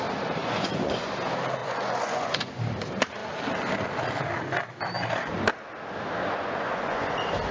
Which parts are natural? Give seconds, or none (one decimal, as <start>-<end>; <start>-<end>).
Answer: 0.0-0.4; 1.1-1.6; 2.6-6.2; 7.1-7.5